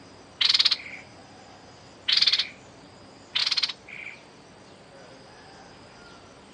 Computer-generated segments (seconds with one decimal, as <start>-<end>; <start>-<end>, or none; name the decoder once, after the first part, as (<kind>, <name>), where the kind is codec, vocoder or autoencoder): none